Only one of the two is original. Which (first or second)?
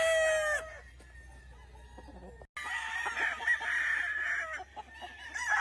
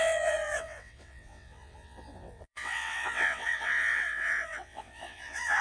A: first